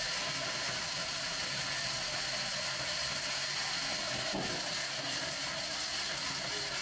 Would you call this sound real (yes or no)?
yes